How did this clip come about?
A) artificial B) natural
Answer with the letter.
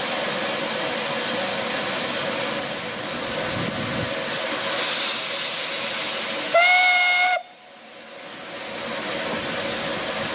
B